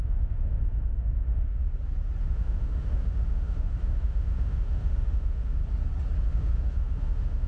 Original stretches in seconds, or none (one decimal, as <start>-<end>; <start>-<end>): 1.6-2.2; 5.6-6.2